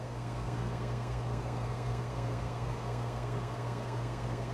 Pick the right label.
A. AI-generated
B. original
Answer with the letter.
A